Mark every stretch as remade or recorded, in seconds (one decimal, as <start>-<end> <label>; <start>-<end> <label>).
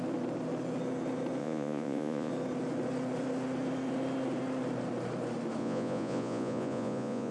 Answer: 0.0-1.4 recorded; 1.4-2.3 remade; 2.3-5.6 recorded; 5.6-7.3 remade